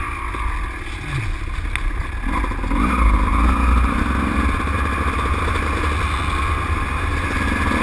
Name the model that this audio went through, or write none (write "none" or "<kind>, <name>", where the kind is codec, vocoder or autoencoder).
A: none